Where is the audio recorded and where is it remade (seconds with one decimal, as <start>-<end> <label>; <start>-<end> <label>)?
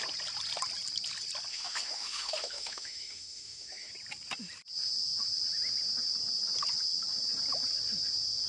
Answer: 0.0-1.5 recorded; 1.5-3.9 remade; 3.9-8.5 recorded